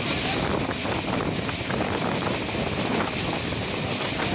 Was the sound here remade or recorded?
recorded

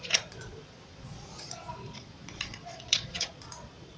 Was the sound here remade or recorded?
remade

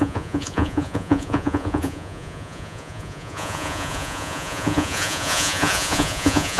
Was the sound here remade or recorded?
remade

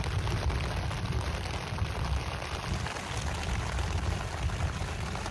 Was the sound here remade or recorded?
recorded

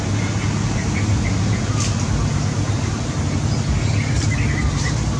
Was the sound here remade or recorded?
recorded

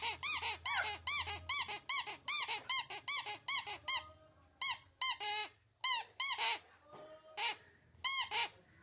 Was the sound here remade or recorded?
recorded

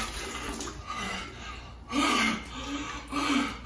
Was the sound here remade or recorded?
recorded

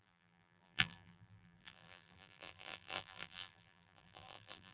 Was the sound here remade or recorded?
remade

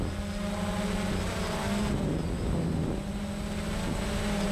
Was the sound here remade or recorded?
recorded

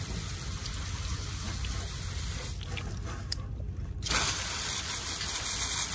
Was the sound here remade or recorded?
recorded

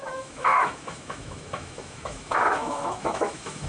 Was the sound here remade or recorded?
remade